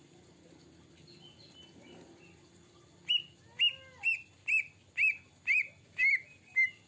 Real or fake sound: real